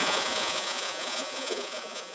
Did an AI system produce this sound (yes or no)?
yes